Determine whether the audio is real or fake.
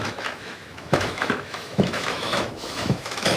fake